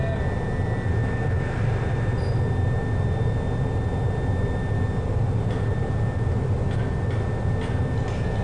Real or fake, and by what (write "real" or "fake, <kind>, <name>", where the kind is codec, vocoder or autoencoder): real